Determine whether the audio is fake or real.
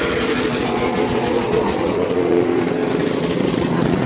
fake